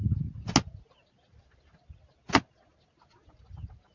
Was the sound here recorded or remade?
recorded